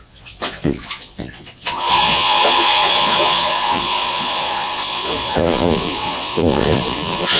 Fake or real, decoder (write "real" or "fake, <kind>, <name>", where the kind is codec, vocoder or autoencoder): fake, vocoder, Vocos